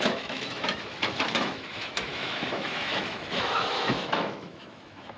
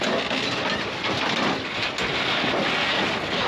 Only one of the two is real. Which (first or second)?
second